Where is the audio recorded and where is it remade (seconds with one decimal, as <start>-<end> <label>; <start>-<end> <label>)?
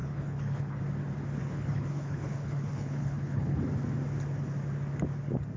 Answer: 0.0-0.8 remade; 0.8-1.4 recorded; 1.4-3.6 remade; 3.6-5.6 recorded